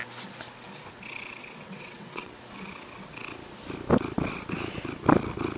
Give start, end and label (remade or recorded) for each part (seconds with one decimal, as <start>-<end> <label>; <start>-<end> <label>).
0.0-1.4 recorded; 1.4-2.3 remade; 2.3-5.6 recorded